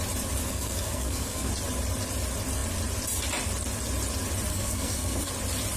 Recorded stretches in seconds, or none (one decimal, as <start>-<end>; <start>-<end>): 0.0-0.4; 1.5-4.5; 5.3-5.8

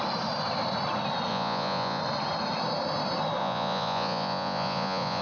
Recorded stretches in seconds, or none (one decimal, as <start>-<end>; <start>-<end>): 0.0-1.3; 2.0-3.4

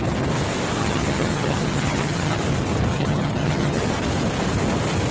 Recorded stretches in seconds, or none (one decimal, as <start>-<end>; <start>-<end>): 0.0-0.8; 2.4-2.9; 3.9-5.1

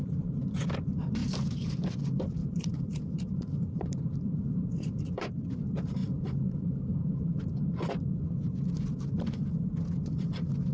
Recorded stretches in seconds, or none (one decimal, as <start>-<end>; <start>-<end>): 0.0-1.2; 1.8-2.4; 5.3-6.0; 7.9-10.7

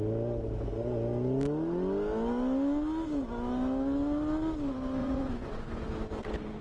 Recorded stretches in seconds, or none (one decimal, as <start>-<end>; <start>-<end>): 0.0-5.0; 5.8-6.6